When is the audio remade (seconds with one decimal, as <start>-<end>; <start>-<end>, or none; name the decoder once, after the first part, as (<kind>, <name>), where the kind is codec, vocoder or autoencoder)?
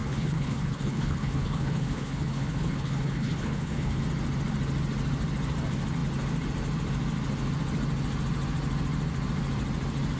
0.0-4.0 (codec, HILCodec)